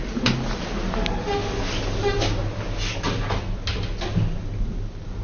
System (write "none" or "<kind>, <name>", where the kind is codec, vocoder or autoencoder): none